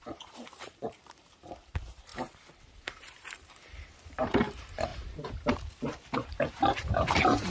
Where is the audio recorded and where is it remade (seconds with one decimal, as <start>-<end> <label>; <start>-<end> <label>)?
0.0-2.1 remade; 2.1-2.6 recorded; 2.6-4.9 remade; 4.9-6.5 recorded; 6.5-7.5 remade